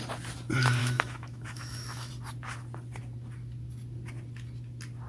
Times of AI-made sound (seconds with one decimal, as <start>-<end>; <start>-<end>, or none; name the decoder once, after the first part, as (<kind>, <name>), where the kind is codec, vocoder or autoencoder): 0.8-2.1 (autoencoder, DAC-VAE)